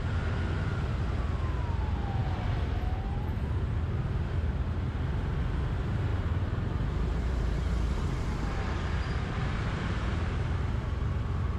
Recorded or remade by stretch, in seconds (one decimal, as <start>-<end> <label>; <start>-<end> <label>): 0.0-6.1 recorded; 6.1-9.8 remade; 9.8-11.6 recorded